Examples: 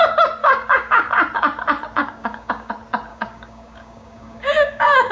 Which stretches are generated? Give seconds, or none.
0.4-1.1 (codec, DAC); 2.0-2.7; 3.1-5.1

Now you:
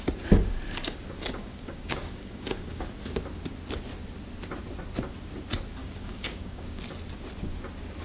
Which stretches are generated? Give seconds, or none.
1.4-2.9 (codec, DAC); 5.8-6.8

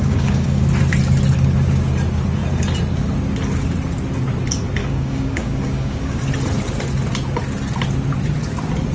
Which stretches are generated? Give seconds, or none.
0.0-0.6 (codec, DAC); 4.8-6.2

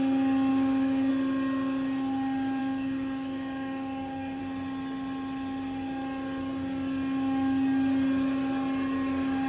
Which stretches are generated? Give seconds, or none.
0.5-1.1 (codec, DAC); 2.6-4.4